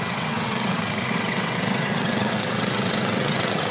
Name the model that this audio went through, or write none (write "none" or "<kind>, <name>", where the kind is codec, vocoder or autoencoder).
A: vocoder, WaveNeXt